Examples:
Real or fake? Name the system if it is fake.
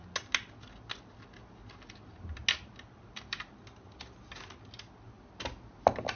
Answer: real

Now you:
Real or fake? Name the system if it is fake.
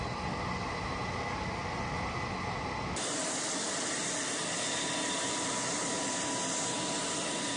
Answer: real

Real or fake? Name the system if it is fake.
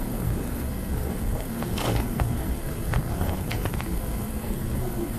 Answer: fake, codec, SNAC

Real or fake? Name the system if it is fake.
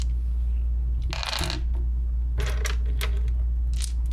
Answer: real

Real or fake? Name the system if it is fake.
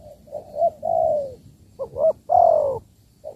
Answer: real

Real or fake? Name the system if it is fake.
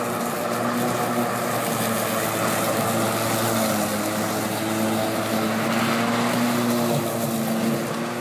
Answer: real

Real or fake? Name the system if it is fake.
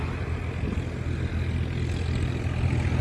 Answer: real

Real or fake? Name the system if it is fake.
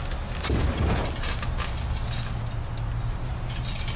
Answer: real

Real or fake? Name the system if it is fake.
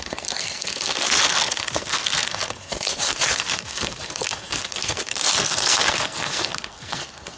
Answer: fake, codec, SNAC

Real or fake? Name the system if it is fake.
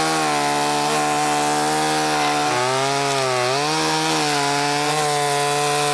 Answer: real